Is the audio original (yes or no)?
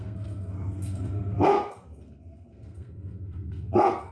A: no